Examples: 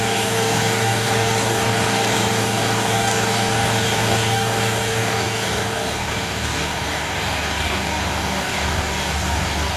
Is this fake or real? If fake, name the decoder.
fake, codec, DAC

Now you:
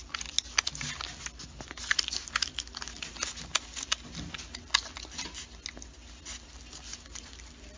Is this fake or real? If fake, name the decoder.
real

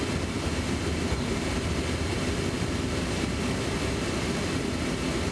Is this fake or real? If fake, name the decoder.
real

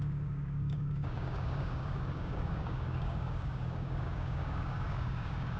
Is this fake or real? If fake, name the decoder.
fake, codec, DAC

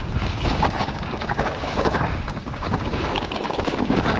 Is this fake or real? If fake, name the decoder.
fake, codec, DAC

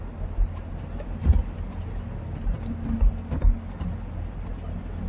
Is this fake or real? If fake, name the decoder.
real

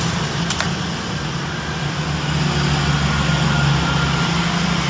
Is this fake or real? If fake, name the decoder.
real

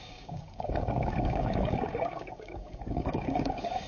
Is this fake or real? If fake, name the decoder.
fake, codec, DAC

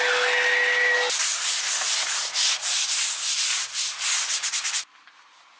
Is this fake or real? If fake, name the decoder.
real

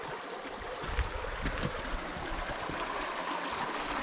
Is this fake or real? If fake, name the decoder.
real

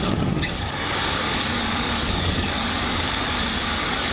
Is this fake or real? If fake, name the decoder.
fake, codec, DAC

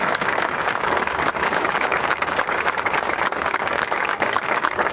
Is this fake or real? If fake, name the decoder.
fake, codec, DAC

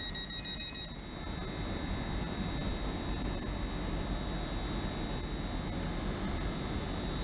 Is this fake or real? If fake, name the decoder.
real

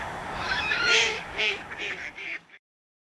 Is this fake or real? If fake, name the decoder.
fake, codec, DAC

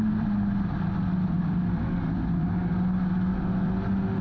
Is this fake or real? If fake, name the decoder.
real